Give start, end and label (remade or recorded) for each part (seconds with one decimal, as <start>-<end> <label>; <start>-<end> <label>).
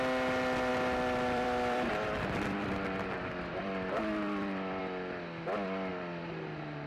0.0-0.7 recorded; 0.7-4.8 remade; 4.8-5.9 recorded; 5.9-6.9 remade